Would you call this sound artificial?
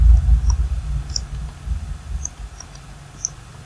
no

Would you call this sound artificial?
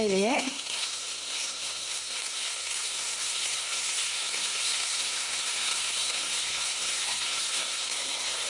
yes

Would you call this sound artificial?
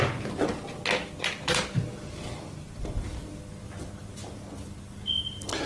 no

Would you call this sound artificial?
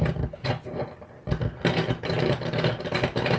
no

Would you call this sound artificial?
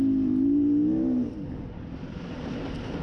no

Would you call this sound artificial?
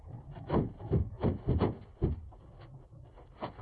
no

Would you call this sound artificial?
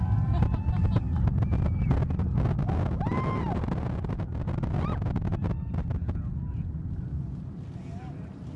no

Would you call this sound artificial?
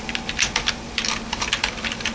no